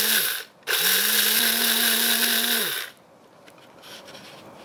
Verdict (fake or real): real